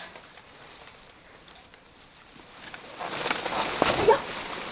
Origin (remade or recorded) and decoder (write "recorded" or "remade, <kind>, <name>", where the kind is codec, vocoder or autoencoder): remade, vocoder, BigVGAN v2